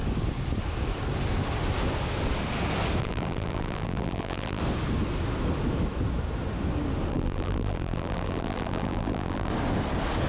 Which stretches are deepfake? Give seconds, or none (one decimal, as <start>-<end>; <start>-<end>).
3.0-4.6; 7.1-9.5

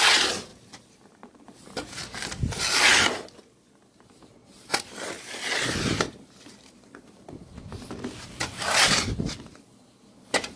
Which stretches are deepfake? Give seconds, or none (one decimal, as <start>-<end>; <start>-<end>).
4.4-8.9

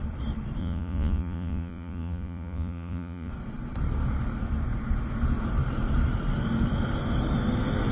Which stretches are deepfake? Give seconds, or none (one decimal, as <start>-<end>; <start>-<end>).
0.6-3.3

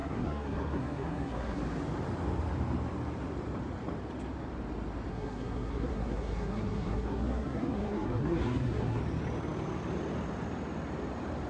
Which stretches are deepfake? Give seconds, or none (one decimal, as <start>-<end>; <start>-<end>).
0.0-1.6; 5.1-9.0

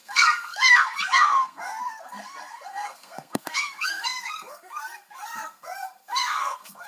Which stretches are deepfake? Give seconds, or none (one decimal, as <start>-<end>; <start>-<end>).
0.0-6.9

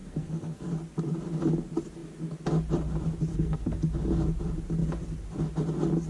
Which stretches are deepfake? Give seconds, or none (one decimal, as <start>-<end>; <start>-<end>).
0.0-0.7; 3.3-3.8